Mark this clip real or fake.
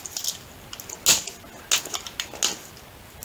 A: real